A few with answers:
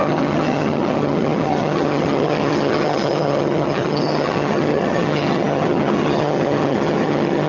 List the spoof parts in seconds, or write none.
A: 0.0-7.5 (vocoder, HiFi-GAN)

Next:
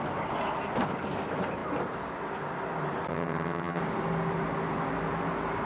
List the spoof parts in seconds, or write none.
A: 3.1-3.8 (vocoder, HiFi-GAN)

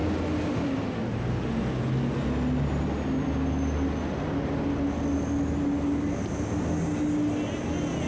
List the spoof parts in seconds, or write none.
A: none

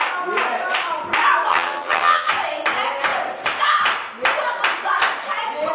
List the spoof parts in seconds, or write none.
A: 1.5-2.3 (vocoder, HiFi-GAN)

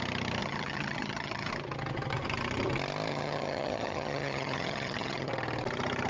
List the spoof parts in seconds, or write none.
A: 0.4-1.5 (vocoder, HiFi-GAN); 3.1-5.3

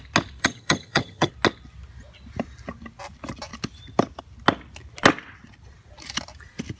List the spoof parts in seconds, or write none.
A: 0.4-1.3 (vocoder, HiFi-GAN)